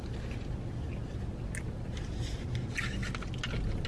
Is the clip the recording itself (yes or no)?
yes